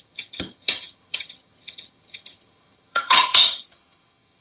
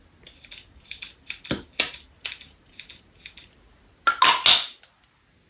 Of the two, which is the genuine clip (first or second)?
second